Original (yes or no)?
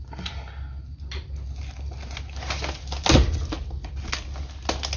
yes